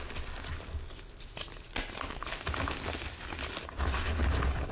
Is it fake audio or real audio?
real